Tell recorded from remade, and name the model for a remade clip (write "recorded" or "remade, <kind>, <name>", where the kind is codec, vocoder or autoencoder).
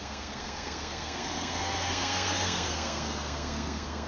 remade, codec, SNAC